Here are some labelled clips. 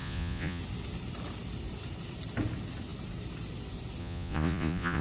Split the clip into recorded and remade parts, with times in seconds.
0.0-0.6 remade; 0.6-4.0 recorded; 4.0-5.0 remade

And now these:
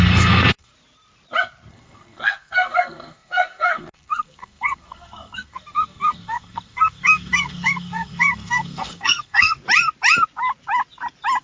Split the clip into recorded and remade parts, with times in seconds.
0.0-0.7 remade; 0.7-1.7 recorded; 1.7-9.6 remade; 9.6-11.4 recorded

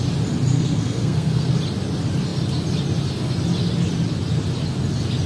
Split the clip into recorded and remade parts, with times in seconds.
0.0-0.5 recorded; 0.5-1.5 remade; 1.5-5.3 recorded

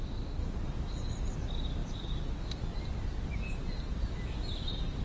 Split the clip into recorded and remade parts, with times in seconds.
0.0-5.0 recorded

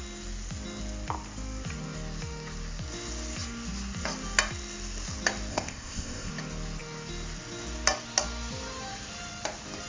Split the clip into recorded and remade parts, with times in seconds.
0.0-5.5 recorded; 5.5-6.3 remade; 6.3-9.9 recorded

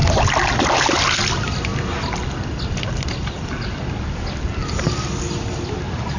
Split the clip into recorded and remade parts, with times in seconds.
0.0-6.2 recorded

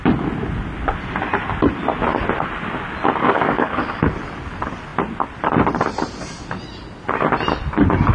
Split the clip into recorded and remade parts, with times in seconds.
0.0-3.2 recorded; 3.2-4.1 remade; 4.1-8.1 recorded

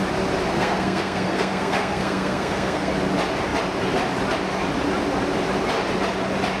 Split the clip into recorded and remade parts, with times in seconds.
0.0-0.5 recorded; 0.5-2.9 remade; 2.9-6.6 recorded